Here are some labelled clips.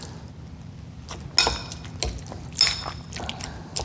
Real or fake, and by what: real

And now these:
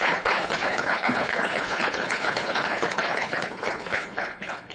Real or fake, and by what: fake, codec, HILCodec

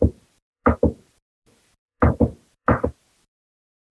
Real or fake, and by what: fake, vocoder, BigVGAN v2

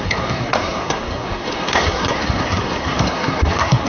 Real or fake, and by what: fake, codec, SNAC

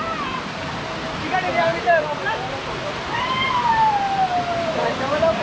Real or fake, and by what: real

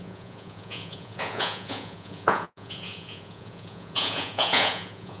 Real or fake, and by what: fake, vocoder, Vocos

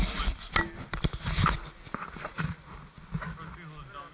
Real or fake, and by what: real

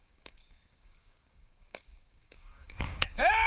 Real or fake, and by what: fake, codec, DAC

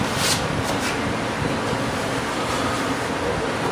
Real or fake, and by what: real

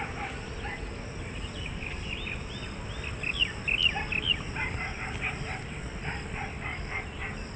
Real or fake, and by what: real